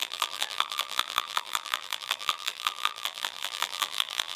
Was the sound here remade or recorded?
remade